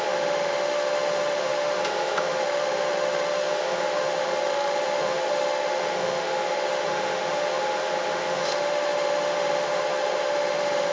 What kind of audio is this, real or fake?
fake